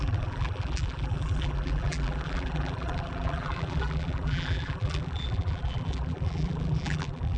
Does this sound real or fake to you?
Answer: fake